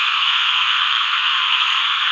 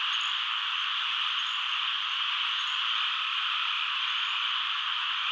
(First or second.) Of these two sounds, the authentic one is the second